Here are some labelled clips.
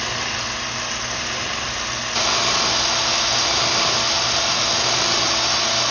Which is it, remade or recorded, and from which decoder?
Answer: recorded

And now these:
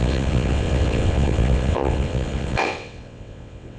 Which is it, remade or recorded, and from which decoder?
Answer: remade, vocoder, WaveNeXt